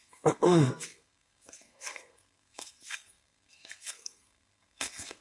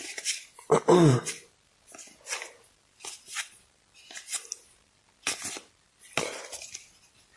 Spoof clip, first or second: first